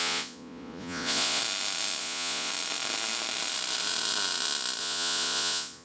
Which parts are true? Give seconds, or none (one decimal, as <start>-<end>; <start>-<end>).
1.4-2.0; 2.5-4.8